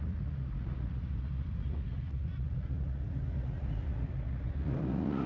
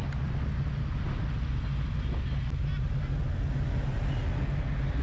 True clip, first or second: second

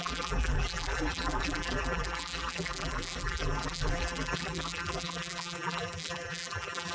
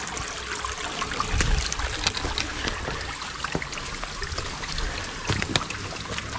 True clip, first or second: second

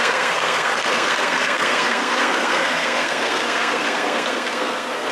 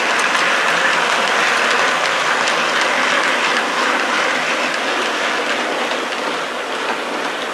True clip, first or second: second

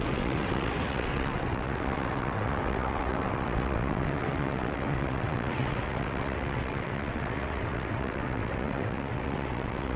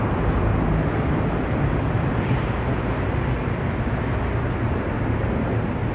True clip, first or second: second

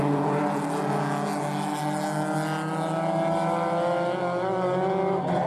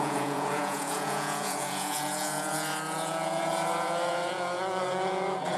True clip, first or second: first